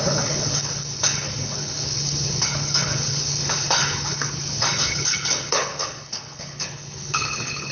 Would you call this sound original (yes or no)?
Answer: no